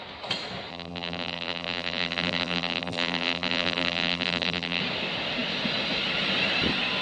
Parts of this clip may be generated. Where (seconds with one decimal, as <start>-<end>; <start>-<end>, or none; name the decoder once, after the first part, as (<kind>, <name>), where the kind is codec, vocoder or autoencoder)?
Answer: 0.7-4.8 (vocoder, BigVGAN v2)